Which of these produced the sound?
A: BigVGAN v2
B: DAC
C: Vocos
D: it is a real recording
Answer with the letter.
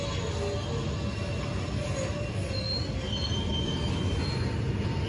D